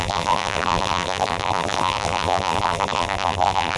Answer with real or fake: fake